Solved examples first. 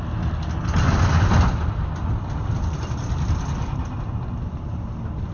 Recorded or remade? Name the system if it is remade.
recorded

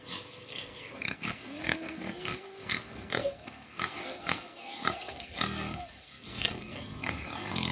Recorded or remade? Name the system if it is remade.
remade, codec, SNAC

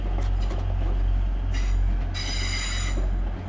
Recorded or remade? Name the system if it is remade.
recorded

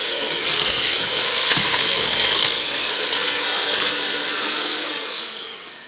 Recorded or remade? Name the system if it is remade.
remade, codec, SNAC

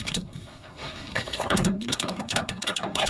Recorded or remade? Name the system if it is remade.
remade, codec, SNAC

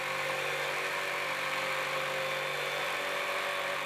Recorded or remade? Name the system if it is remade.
recorded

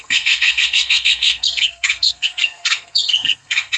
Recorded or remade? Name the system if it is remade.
remade, codec, SNAC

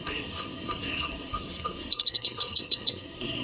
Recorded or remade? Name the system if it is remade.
remade, codec, SNAC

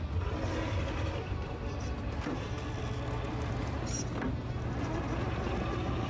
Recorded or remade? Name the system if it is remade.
recorded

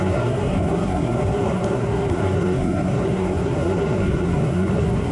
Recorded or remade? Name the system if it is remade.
remade, codec, SNAC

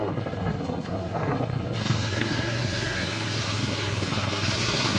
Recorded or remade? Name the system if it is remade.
remade, codec, SNAC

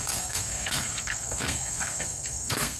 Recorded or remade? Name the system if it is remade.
remade, codec, SNAC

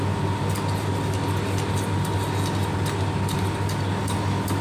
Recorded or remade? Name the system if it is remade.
recorded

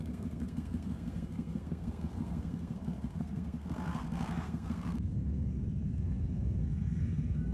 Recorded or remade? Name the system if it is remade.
remade, codec, SNAC